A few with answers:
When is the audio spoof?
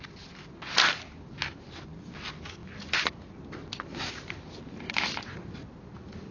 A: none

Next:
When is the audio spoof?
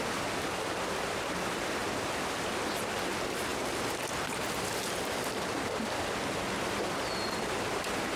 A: 1.8-3.1; 3.5-5.9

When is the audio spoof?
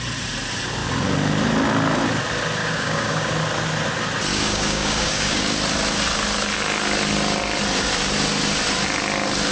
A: 2.6-3.3; 4.3-5.4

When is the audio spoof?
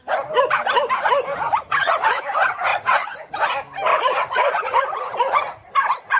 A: 1.3-2.2; 2.7-3.3; 3.9-5.7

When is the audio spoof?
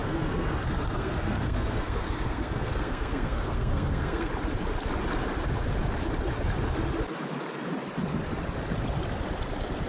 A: 0.0-4.3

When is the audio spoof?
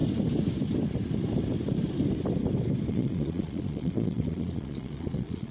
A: 2.9-5.5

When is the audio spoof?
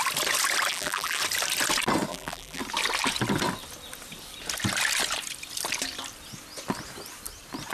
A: 0.7-1.2; 2.1-2.6